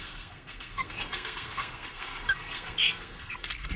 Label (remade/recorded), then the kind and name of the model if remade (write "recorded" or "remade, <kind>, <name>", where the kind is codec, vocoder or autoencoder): remade, codec, SNAC